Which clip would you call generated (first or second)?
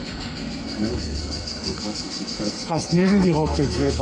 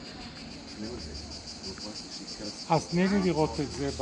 first